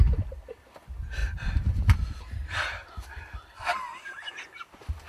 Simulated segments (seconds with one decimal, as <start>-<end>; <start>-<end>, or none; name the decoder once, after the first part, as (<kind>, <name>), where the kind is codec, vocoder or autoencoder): 1.2-4.3 (vocoder, BigVGAN v2)